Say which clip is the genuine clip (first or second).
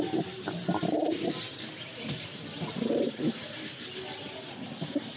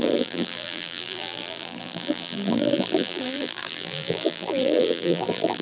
first